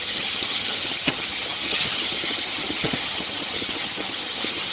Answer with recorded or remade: remade